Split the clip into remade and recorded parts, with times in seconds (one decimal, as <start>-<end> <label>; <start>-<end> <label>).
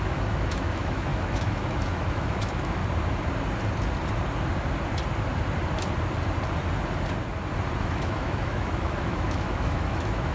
0.0-2.8 remade; 2.8-7.8 recorded; 7.8-10.3 remade